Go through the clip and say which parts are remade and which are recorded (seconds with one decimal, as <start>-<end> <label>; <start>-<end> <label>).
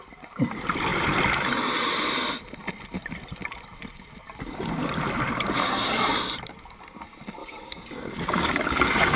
0.0-7.4 recorded; 7.4-9.2 remade